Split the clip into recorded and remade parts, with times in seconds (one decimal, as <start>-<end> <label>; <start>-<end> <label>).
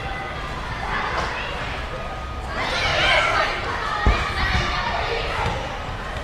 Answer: 0.0-6.2 recorded